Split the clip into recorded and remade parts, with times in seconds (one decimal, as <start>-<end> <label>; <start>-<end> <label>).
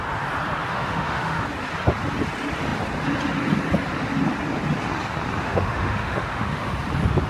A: 0.0-0.7 recorded; 0.7-1.4 remade; 1.4-5.4 recorded; 5.4-6.7 remade; 6.7-7.3 recorded